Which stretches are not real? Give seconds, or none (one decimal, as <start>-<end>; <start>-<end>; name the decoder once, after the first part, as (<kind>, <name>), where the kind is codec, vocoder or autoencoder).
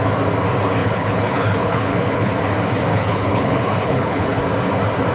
0.8-2.3 (codec, HILCodec); 2.9-4.4